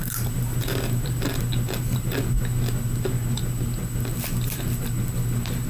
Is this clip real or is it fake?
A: real